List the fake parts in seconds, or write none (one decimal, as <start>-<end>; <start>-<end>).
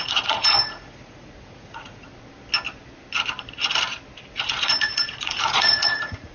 0.0-2.1; 4.4-6.3